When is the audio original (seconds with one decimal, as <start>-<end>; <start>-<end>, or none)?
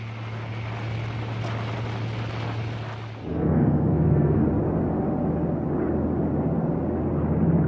0.0-3.3; 4.4-7.7